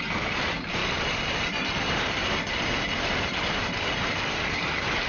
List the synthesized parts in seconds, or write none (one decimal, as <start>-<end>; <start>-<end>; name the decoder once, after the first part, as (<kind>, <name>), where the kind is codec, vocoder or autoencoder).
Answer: none